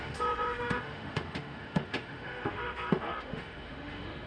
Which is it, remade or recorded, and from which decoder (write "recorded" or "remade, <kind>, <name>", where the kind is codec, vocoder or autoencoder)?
remade, autoencoder, DAC-VAE